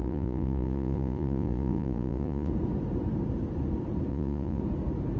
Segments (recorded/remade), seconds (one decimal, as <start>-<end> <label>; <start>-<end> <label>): 0.0-2.5 remade; 2.5-4.1 recorded; 4.1-4.6 remade; 4.6-5.2 recorded